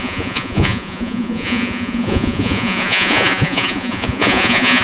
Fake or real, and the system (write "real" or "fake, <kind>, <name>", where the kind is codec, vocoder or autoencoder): fake, vocoder, Vocos